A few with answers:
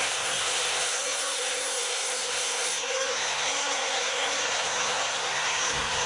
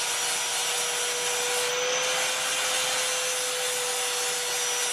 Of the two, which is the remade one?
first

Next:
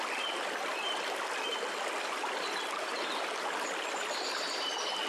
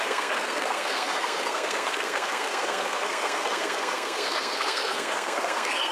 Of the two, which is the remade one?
second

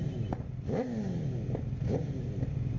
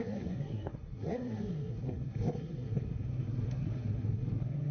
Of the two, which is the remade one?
second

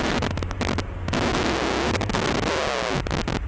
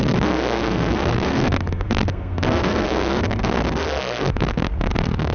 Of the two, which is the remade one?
second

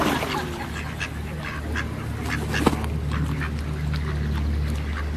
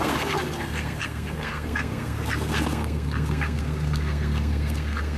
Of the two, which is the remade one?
second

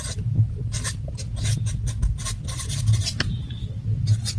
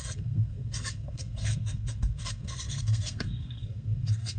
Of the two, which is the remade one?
second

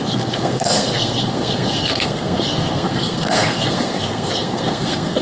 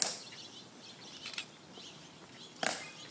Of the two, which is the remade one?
first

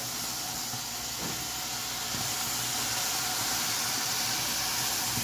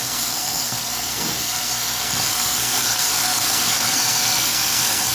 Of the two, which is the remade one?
second